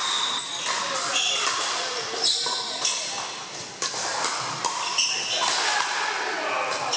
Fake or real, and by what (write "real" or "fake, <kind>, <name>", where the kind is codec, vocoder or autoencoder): real